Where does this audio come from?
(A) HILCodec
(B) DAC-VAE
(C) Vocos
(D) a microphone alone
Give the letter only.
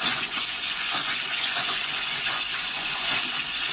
C